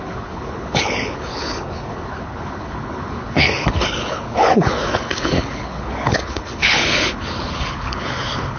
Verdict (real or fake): fake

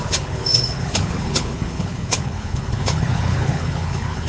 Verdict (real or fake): fake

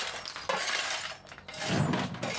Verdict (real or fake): real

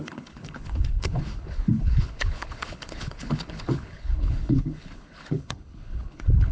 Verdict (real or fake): fake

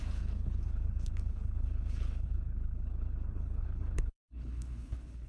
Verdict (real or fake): fake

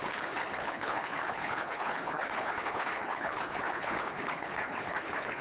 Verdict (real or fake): fake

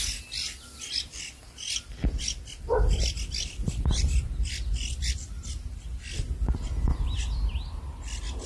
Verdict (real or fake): real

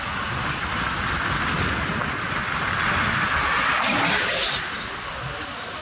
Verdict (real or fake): real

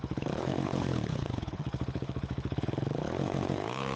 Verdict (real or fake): fake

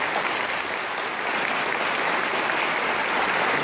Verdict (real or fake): real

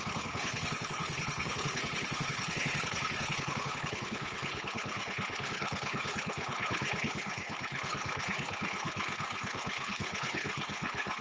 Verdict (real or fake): fake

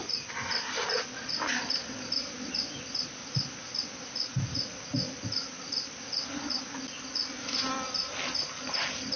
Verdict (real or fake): real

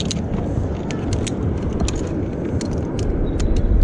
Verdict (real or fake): real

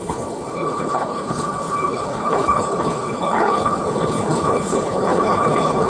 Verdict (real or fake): fake